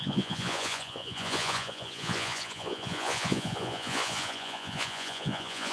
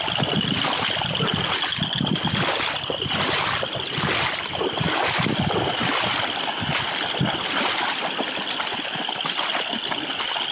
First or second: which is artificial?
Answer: first